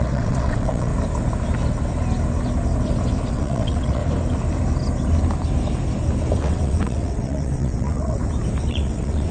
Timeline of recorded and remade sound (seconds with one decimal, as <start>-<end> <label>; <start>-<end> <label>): 0.0-0.9 remade; 0.9-3.3 recorded; 3.3-4.0 remade; 4.0-6.4 recorded; 6.4-8.2 remade; 8.2-8.7 recorded; 8.7-9.3 remade

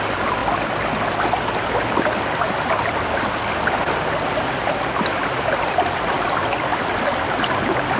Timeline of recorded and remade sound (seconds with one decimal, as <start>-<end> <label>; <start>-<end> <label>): 0.0-8.0 recorded

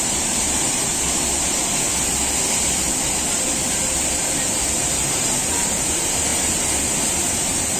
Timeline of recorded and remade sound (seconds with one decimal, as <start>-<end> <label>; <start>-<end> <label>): 0.0-0.9 remade; 0.9-5.0 recorded; 5.0-6.3 remade; 6.3-7.1 recorded; 7.1-7.8 remade